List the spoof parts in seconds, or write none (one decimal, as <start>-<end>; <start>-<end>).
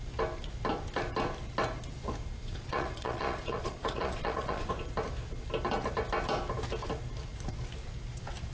2.4-4.7